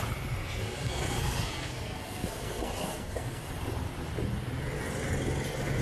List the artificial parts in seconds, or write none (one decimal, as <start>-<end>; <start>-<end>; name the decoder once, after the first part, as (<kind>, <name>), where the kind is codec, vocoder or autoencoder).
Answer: 0.4-3.5 (codec, SNAC)